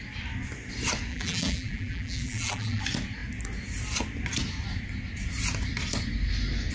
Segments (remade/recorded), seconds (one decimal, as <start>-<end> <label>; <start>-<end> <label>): 0.0-1.1 recorded; 1.1-2.8 remade; 2.8-6.7 recorded